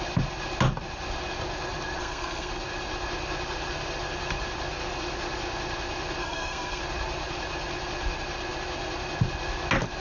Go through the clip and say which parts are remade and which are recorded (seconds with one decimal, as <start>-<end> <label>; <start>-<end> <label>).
0.0-2.0 recorded; 2.0-2.5 remade; 2.5-6.2 recorded; 6.2-6.8 remade; 6.8-10.0 recorded